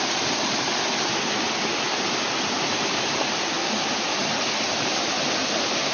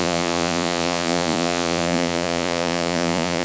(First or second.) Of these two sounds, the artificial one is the second